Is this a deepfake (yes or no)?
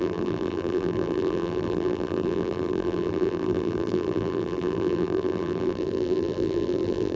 yes